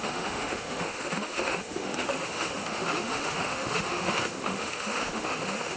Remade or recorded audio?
remade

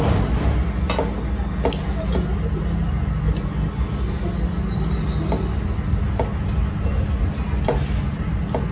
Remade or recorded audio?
recorded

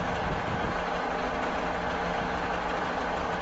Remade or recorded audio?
recorded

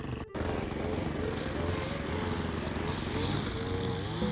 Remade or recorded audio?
recorded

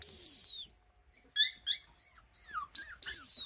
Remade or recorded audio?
recorded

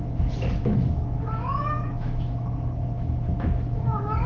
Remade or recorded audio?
remade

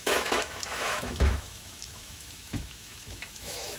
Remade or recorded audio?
remade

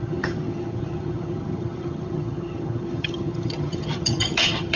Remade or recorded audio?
remade